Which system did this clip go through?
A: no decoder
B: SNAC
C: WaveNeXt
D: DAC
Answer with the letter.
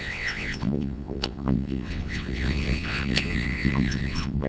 C